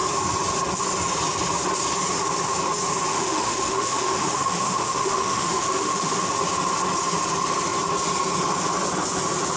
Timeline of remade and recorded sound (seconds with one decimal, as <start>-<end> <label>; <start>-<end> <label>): 0.0-3.1 recorded; 3.1-6.3 remade; 6.3-9.6 recorded